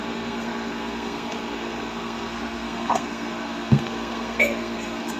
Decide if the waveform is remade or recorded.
remade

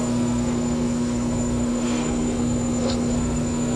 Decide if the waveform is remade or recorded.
remade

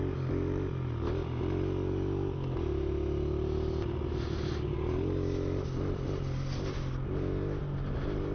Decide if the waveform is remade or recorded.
recorded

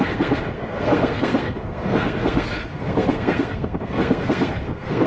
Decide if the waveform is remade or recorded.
remade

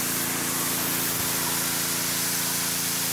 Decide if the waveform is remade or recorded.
recorded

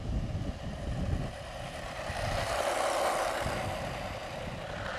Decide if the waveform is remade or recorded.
recorded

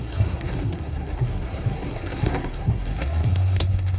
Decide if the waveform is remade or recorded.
remade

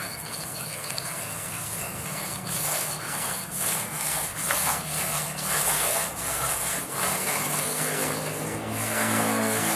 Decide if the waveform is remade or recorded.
remade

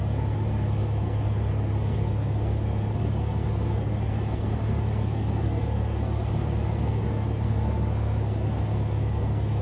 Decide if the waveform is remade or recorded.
remade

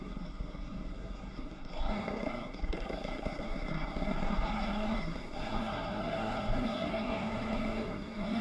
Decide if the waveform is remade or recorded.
remade